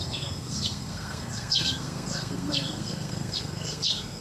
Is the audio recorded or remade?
remade